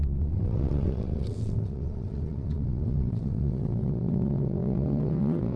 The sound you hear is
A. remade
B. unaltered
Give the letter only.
A